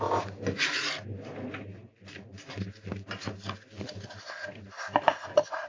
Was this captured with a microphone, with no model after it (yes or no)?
yes